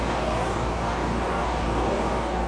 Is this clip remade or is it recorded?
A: remade